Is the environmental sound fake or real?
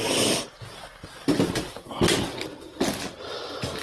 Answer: real